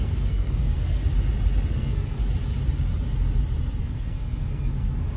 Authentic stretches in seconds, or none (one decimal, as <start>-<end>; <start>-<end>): 1.0-1.7; 2.2-3.8